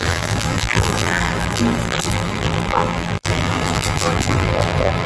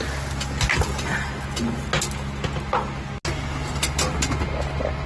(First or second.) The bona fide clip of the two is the second